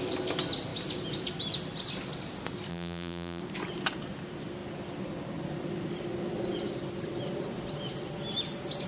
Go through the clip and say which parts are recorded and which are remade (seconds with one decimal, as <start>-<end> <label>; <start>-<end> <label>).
0.0-2.7 recorded; 2.7-3.4 remade; 3.4-8.9 recorded